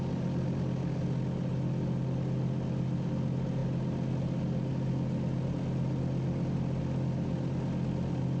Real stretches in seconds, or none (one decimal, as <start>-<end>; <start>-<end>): 0.0-8.4